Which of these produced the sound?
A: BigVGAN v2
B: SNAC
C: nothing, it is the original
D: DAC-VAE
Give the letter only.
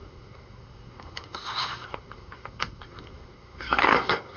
B